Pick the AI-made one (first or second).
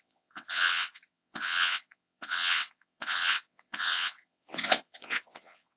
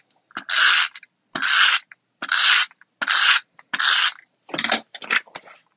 first